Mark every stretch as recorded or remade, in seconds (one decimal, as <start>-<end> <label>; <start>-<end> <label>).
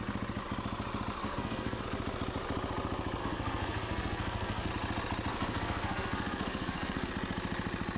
0.0-1.2 recorded; 1.2-1.8 remade; 1.8-3.2 recorded; 3.2-4.7 remade; 4.7-5.3 recorded; 5.3-7.1 remade; 7.1-8.0 recorded